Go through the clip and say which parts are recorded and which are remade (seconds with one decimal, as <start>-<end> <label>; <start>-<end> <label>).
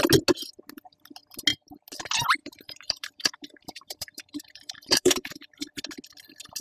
0.0-2.4 recorded; 2.4-5.6 remade; 5.6-6.6 recorded